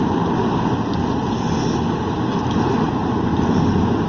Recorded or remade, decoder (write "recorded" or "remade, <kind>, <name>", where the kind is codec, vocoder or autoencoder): recorded